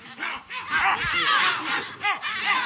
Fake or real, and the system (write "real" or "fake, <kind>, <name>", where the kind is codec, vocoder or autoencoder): fake, vocoder, BigVGAN v2